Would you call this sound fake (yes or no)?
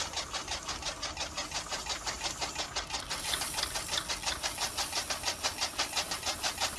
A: no